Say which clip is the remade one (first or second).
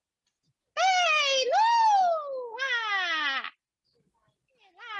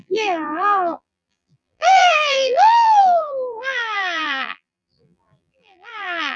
second